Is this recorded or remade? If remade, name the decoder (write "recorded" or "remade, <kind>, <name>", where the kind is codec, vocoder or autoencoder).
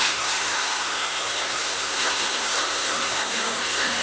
remade, codec, SNAC